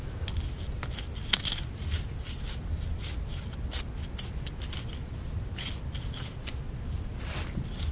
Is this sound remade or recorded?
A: recorded